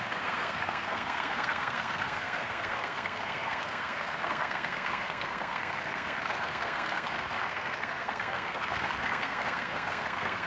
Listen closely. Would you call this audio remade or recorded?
remade